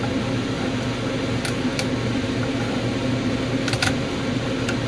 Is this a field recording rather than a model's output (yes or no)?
yes